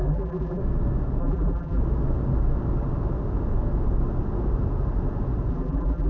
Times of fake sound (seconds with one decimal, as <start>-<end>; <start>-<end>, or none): 0.0-0.6; 1.2-1.8; 5.5-6.1